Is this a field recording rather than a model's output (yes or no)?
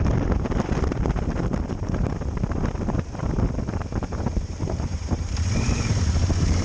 no